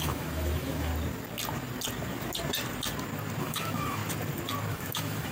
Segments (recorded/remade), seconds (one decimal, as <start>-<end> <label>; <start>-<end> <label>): 0.0-0.9 remade; 0.9-3.4 recorded; 3.4-4.0 remade; 4.0-4.7 recorded; 4.7-5.3 remade